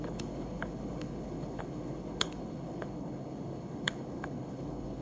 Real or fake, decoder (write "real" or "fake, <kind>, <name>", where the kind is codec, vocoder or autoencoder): fake, codec, HILCodec